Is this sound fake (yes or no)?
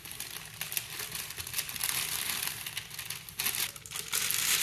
no